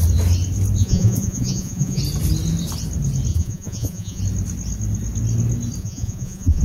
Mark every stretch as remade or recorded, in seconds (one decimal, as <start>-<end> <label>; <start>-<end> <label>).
0.0-0.8 recorded; 0.8-2.0 remade; 2.0-3.3 recorded; 3.3-4.2 remade; 4.2-5.8 recorded; 5.8-6.6 remade